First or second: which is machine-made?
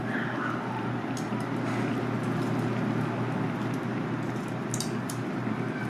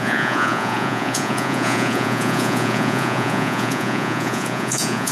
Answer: second